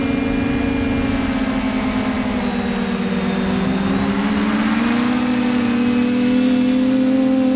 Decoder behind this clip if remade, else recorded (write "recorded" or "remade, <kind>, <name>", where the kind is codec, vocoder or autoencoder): recorded